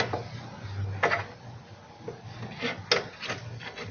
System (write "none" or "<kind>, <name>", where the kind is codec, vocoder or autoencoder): none